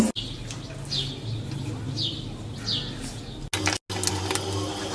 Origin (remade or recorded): recorded